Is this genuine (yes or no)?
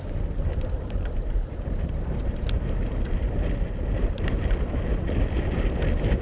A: no